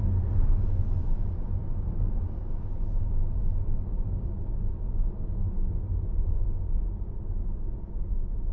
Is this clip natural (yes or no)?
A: yes